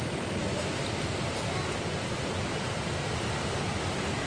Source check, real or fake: real